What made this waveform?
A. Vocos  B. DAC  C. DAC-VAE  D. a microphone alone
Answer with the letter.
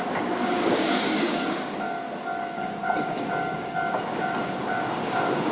B